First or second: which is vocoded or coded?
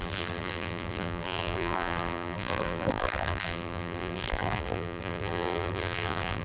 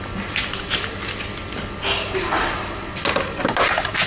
first